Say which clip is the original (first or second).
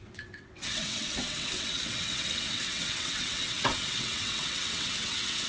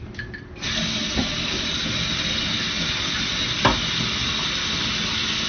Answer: second